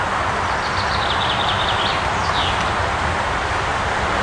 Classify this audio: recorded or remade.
recorded